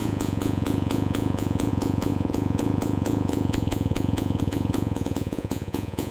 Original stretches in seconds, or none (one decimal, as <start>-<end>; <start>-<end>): none